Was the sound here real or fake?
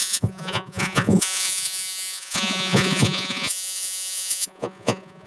fake